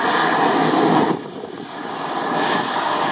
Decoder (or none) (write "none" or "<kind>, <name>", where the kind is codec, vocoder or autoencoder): none